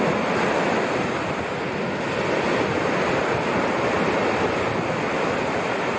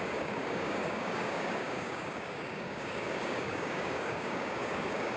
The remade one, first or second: second